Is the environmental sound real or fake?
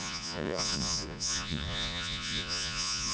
fake